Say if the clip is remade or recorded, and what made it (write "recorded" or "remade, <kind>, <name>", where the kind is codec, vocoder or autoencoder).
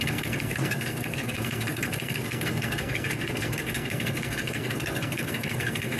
remade, codec, SNAC